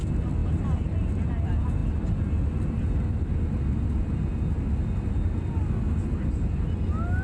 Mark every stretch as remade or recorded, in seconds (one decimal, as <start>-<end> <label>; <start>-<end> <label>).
0.0-7.2 recorded